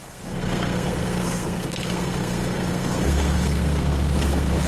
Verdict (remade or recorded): remade